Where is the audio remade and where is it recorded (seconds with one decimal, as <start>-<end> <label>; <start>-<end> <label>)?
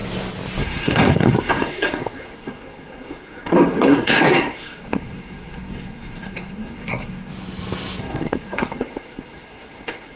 0.0-0.6 recorded; 0.6-7.3 remade; 7.3-8.0 recorded; 8.0-10.2 remade